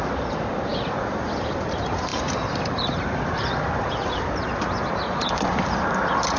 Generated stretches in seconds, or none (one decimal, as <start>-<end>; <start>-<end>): 0.0-6.4